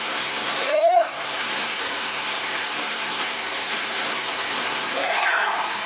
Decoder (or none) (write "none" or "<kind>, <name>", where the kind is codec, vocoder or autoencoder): codec, SNAC